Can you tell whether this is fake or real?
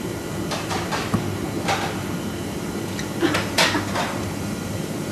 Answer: fake